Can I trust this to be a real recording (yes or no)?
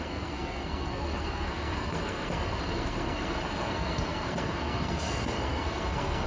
no